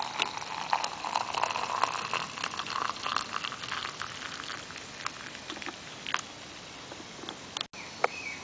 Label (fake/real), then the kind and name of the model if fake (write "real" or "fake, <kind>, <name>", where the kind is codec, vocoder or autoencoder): real